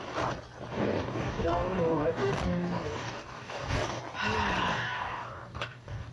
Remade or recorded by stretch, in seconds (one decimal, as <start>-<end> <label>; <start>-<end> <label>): 0.0-0.7 recorded; 0.7-4.0 remade; 4.0-4.7 recorded; 4.7-6.1 remade